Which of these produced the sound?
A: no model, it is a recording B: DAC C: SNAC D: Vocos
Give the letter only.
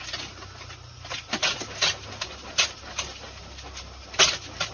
A